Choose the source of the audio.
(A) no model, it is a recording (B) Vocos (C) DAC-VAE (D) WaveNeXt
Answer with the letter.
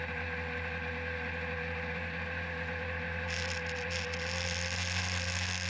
A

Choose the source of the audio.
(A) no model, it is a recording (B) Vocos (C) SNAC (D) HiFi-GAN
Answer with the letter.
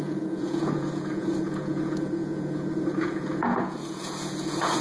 B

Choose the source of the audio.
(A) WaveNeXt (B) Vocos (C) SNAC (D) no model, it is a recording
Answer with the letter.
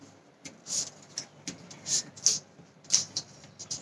D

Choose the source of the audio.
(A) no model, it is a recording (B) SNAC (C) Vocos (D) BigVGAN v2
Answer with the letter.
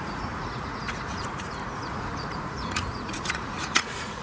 C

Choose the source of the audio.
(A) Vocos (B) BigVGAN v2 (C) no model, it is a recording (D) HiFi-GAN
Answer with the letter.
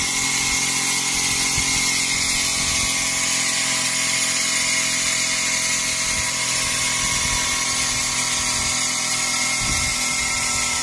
C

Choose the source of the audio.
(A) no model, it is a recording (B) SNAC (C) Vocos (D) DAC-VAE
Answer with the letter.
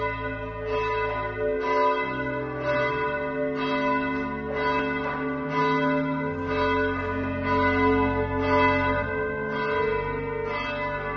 A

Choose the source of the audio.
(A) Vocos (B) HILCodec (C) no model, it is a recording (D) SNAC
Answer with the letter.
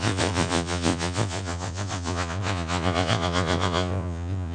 A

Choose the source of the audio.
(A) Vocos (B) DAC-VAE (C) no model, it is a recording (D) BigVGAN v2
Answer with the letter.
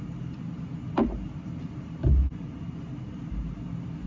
C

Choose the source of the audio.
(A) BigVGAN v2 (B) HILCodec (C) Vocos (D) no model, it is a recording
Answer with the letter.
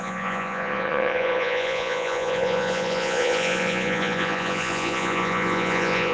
C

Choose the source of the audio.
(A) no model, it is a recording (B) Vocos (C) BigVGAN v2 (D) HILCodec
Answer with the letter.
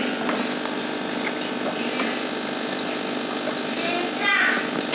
A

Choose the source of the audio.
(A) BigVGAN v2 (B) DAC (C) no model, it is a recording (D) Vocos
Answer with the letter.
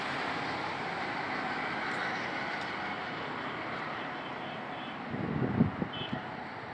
C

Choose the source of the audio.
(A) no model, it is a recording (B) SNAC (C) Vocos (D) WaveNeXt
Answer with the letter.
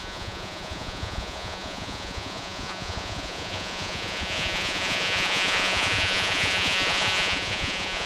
C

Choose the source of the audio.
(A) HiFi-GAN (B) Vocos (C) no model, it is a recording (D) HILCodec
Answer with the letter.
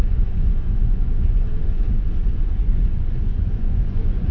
B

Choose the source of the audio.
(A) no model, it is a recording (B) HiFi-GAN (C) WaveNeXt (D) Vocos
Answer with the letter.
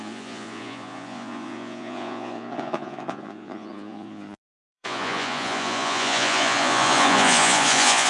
D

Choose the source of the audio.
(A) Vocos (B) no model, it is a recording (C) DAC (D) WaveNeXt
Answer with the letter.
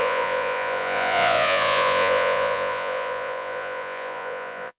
A